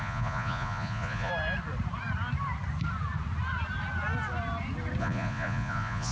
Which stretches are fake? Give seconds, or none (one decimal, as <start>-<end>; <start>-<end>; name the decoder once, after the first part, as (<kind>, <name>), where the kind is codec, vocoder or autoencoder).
0.0-1.3 (vocoder, Vocos); 5.0-6.1